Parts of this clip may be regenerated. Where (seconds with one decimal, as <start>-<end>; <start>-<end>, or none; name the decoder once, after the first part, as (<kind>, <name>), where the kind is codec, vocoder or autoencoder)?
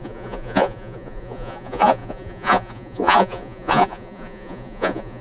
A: 0.0-5.2 (vocoder, Vocos)